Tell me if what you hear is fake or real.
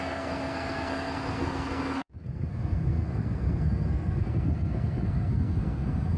fake